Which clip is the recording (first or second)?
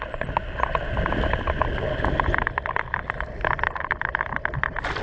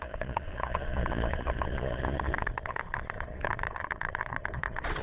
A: first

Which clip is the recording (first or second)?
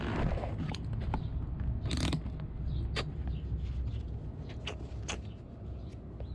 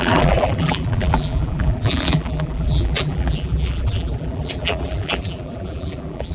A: first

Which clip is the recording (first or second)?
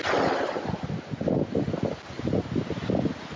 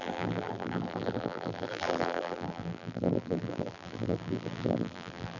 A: first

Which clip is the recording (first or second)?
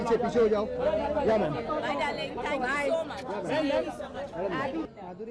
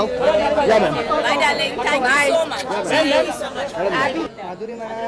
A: first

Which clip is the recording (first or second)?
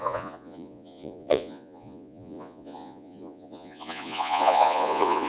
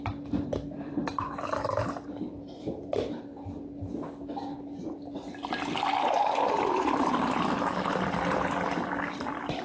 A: second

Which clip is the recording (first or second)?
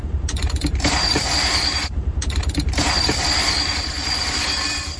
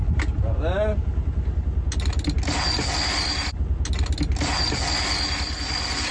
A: second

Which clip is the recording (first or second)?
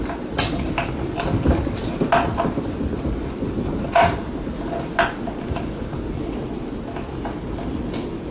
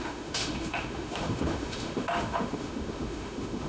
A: first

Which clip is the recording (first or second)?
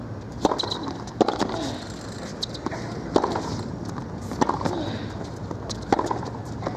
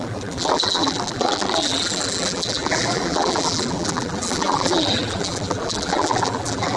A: first